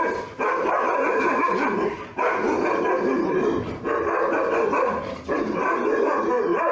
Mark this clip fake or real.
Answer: real